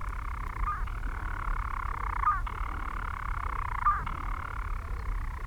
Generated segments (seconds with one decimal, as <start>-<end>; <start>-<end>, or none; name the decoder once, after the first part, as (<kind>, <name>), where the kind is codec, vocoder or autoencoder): none